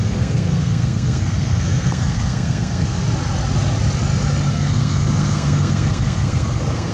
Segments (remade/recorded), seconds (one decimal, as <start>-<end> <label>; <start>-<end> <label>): 0.0-3.0 remade; 3.0-4.5 recorded; 4.5-6.9 remade